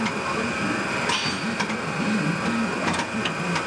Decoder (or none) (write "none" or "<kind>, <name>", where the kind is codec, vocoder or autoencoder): none